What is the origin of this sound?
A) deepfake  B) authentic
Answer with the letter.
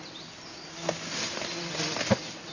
B